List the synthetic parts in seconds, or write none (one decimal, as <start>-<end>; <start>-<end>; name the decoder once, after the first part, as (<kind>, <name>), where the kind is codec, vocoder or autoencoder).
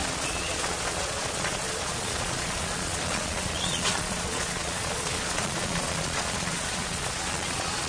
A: 0.0-7.9 (vocoder, Vocos)